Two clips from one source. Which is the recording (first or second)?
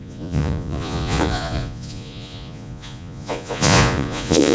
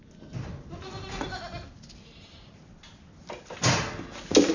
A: second